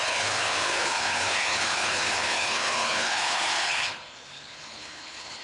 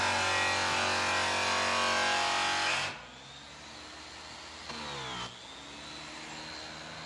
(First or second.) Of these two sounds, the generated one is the first